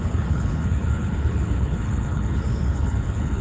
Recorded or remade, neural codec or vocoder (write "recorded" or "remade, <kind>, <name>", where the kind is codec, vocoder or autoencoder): remade, codec, HILCodec